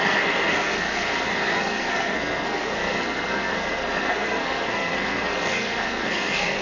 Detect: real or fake fake